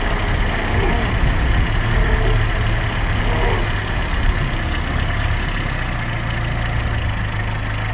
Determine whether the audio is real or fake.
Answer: real